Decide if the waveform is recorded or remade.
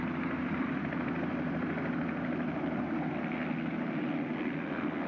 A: recorded